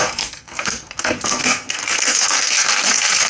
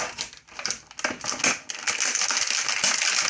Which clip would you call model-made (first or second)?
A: first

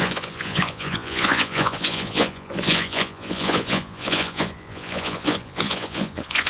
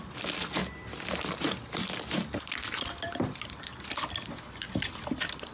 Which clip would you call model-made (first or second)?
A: first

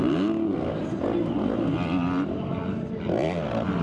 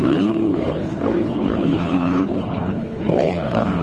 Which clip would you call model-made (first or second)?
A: second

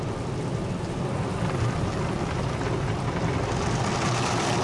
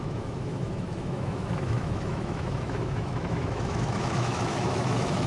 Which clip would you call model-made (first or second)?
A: second